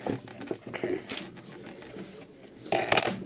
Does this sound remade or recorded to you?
recorded